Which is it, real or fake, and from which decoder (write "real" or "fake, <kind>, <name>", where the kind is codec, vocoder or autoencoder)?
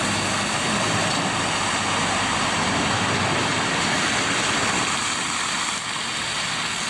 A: real